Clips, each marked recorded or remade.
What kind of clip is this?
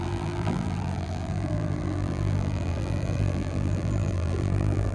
remade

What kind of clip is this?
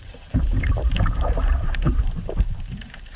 remade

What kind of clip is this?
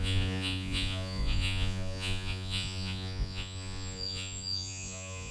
remade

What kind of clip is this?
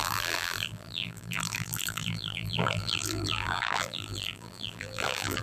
remade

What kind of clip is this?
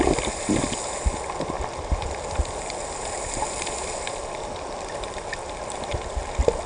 recorded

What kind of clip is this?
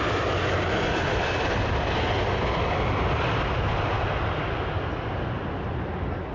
recorded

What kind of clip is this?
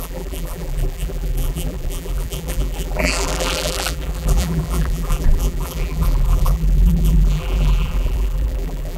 remade